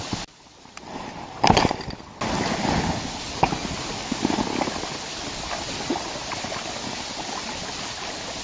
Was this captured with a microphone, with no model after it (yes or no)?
yes